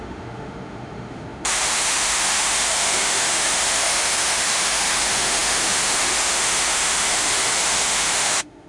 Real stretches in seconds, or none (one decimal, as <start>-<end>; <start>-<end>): none